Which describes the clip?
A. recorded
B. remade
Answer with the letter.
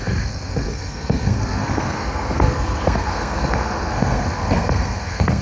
B